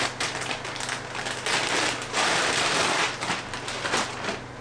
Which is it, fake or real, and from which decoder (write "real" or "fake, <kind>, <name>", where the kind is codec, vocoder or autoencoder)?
real